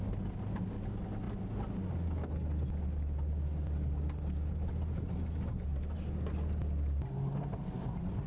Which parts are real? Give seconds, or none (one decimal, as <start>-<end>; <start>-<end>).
0.0-5.7; 7.6-8.3